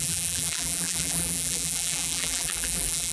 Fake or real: fake